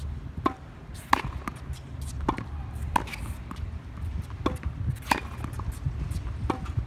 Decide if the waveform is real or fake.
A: real